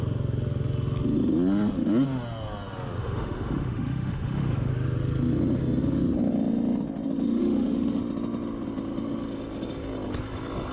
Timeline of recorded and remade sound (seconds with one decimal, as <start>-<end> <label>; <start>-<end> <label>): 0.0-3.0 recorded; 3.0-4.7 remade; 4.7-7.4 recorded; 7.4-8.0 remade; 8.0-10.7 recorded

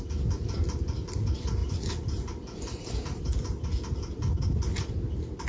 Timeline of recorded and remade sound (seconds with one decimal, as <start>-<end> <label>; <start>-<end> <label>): 0.0-5.5 recorded

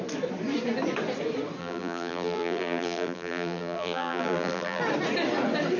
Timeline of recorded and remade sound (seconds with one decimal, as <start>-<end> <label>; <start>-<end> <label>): 0.0-1.6 recorded; 1.6-4.8 remade; 4.8-5.8 recorded

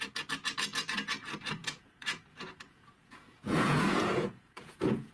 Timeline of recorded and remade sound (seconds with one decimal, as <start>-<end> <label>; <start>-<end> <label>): 0.0-1.6 recorded; 1.6-5.1 remade